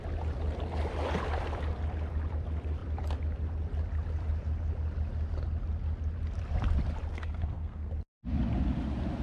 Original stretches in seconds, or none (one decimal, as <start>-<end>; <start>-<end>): 0.0-7.1; 7.9-9.2